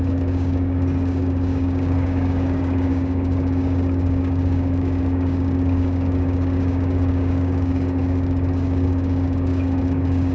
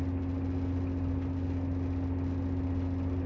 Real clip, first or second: second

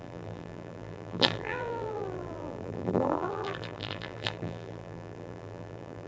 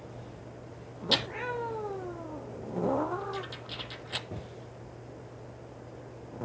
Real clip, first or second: second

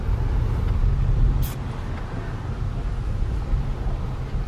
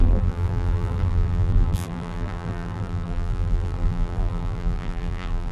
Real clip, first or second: first